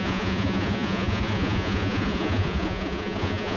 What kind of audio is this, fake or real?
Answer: fake